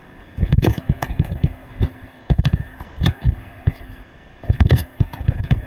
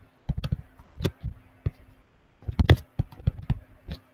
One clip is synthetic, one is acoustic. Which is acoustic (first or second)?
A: second